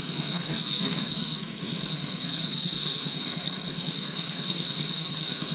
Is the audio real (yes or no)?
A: no